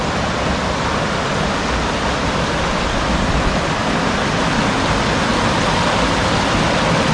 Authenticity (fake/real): real